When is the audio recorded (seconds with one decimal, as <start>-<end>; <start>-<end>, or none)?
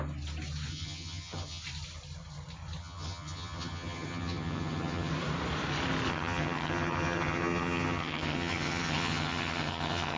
0.0-0.7; 1.6-2.8; 5.1-6.1